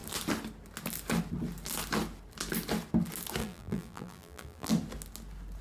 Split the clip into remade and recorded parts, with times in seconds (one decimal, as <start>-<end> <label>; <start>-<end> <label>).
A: 0.0-3.4 recorded; 3.4-4.7 remade; 4.7-5.6 recorded